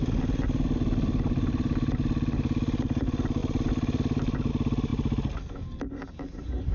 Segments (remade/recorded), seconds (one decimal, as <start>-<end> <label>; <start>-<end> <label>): 0.0-3.4 recorded; 3.4-4.5 remade; 4.5-6.7 recorded